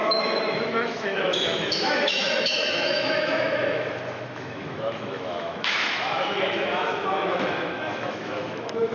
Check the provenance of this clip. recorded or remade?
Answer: remade